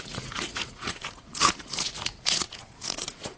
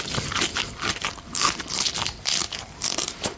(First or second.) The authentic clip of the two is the second